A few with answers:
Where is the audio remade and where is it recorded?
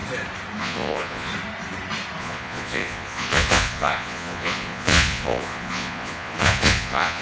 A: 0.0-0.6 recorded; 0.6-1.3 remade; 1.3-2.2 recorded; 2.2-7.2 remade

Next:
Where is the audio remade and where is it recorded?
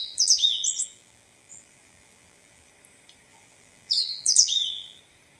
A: 0.0-2.7 remade; 2.7-3.3 recorded; 3.3-5.0 remade; 5.0-5.4 recorded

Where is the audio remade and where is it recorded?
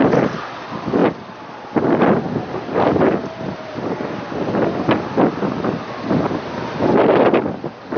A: 0.0-8.0 recorded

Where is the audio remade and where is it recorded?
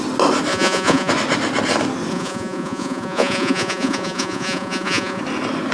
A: 0.0-0.5 recorded; 0.5-1.1 remade; 1.1-2.1 recorded; 2.1-5.2 remade; 5.2-5.7 recorded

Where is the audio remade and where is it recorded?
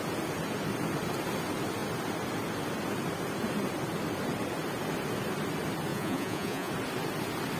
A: 0.0-5.9 recorded; 5.9-6.7 remade; 6.7-7.6 recorded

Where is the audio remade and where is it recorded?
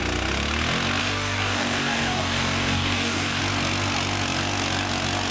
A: 0.0-1.0 recorded; 1.0-3.4 remade; 3.4-5.3 recorded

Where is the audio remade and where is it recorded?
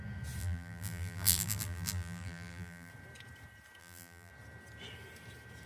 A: 0.0-0.4 recorded; 0.4-2.9 remade; 2.9-3.8 recorded; 3.8-4.3 remade; 4.3-5.7 recorded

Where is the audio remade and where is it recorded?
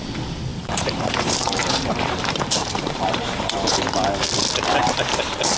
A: 0.0-0.5 recorded; 0.5-3.9 remade; 3.9-5.6 recorded